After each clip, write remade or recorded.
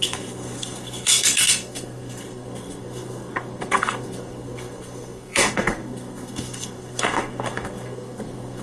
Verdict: remade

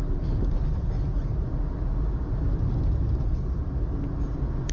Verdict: recorded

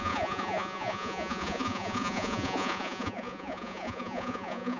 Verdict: remade